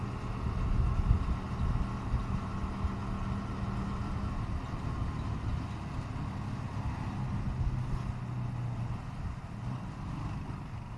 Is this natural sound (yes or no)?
yes